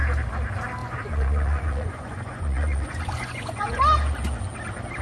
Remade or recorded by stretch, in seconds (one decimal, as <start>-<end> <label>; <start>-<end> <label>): 0.0-0.8 recorded; 0.8-3.8 remade; 3.8-5.0 recorded